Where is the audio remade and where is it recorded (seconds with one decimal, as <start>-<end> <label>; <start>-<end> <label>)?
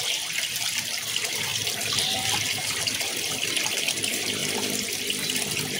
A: 0.0-4.4 remade; 4.4-5.0 recorded; 5.0-5.8 remade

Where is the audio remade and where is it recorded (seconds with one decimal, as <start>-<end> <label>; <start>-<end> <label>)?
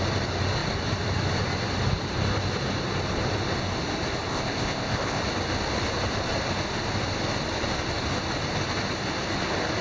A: 0.0-4.3 recorded; 4.3-5.2 remade; 5.2-9.8 recorded